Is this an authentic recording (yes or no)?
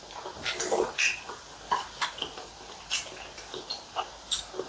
yes